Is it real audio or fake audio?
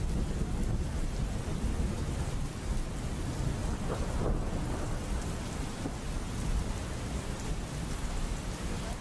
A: real